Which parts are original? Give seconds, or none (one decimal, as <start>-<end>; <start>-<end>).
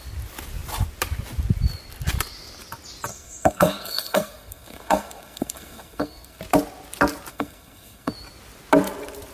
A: 0.0-3.1; 6.4-7.3; 8.1-9.3